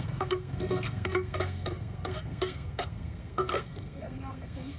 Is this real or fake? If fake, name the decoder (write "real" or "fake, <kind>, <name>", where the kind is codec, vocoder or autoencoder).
fake, codec, SNAC